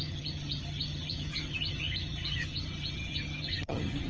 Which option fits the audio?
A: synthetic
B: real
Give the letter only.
A